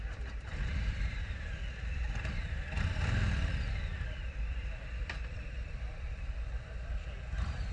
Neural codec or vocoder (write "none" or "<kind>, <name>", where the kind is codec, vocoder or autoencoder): vocoder, BigVGAN v2